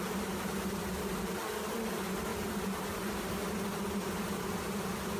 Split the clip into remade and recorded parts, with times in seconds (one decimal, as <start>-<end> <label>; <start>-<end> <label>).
0.0-2.3 recorded; 2.3-3.4 remade; 3.4-5.2 recorded